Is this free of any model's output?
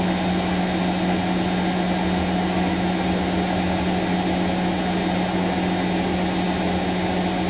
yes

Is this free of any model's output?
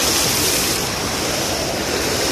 yes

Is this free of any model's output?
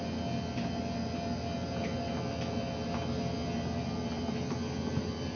yes